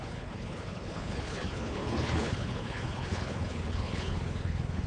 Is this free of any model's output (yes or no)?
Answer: no